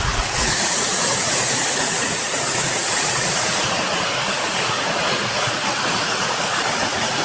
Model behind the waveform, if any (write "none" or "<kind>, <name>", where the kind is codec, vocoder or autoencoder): vocoder, Vocos